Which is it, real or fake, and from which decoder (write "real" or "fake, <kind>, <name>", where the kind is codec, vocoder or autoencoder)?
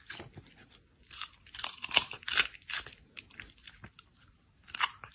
real